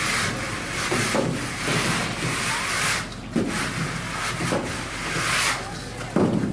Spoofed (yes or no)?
no